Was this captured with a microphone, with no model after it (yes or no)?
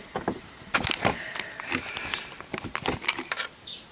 yes